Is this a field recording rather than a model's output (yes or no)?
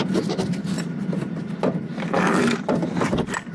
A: yes